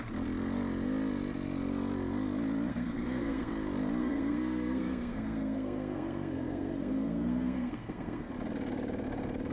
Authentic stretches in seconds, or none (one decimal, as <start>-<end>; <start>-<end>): 0.0-2.7; 3.5-4.0; 8.3-9.5